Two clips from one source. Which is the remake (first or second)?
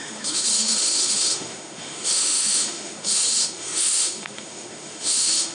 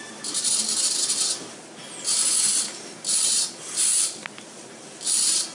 first